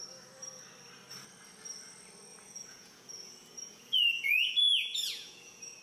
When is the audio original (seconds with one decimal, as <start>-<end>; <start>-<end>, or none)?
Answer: 0.0-2.3